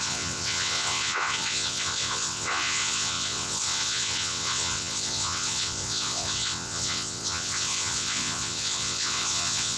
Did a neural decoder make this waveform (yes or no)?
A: yes